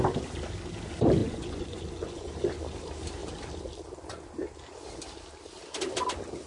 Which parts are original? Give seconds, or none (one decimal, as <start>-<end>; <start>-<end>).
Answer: 0.0-1.2; 2.3-6.5